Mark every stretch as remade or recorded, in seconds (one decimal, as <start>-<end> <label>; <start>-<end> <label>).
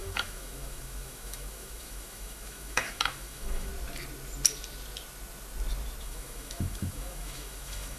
0.0-3.7 remade; 3.7-6.0 recorded; 6.0-8.0 remade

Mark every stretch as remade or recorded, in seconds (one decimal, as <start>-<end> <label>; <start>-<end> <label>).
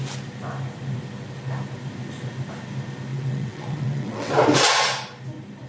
0.0-3.1 recorded; 3.1-4.3 remade; 4.3-5.7 recorded